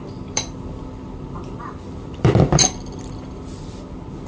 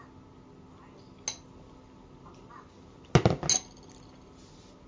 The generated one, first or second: first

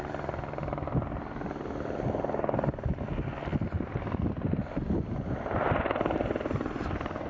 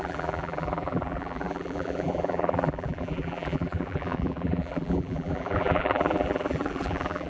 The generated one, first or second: second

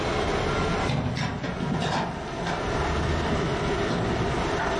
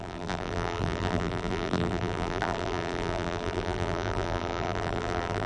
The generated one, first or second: second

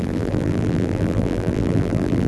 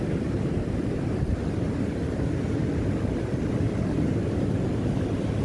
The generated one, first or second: first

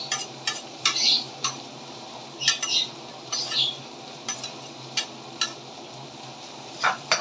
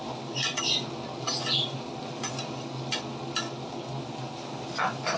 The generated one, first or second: first